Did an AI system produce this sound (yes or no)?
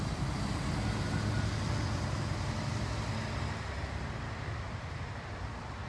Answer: no